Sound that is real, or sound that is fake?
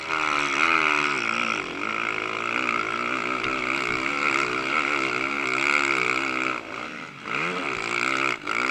real